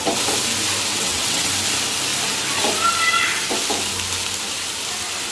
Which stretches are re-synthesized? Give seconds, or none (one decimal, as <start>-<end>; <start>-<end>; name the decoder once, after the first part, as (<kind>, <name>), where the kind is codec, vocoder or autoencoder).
0.9-1.5 (vocoder, WaveNeXt)

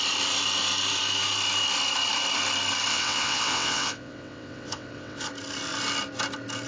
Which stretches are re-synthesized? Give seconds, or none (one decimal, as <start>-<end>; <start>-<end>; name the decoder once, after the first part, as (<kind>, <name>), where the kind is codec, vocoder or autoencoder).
2.9-5.3 (vocoder, WaveNeXt)

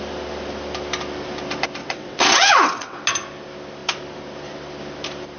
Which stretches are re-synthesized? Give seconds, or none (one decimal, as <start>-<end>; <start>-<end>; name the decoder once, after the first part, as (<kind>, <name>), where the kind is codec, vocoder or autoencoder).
1.8-3.0 (vocoder, WaveNeXt)

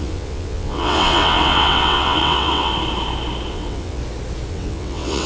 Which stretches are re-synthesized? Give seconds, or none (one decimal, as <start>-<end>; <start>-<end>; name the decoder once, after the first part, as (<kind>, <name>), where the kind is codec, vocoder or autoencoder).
0.0-2.7 (vocoder, WaveNeXt); 3.5-4.0; 4.5-5.3

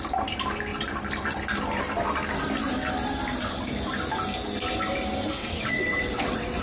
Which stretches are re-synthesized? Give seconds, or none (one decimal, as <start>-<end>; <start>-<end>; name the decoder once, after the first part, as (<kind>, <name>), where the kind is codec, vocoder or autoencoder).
5.4-6.6 (vocoder, WaveNeXt)

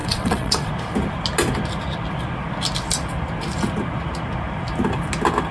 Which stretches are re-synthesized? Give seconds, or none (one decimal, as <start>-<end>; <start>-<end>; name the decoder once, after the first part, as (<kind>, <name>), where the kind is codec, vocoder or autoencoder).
0.0-0.7 (vocoder, WaveNeXt)